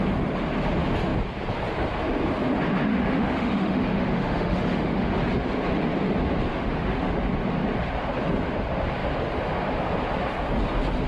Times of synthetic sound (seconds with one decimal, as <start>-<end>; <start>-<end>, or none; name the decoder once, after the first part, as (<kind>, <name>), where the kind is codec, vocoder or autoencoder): 2.9-5.1 (autoencoder, DAC-VAE); 6.5-7.1